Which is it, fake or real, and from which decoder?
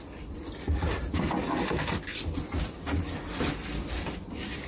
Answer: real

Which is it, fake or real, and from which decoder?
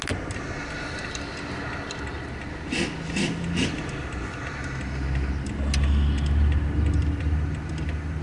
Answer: real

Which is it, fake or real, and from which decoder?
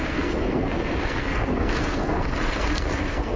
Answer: fake, codec, SNAC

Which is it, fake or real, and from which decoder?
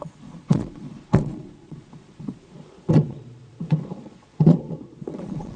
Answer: fake, vocoder, Vocos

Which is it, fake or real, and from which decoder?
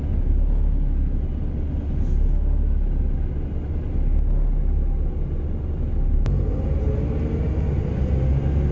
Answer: real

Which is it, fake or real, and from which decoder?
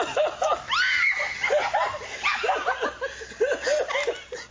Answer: real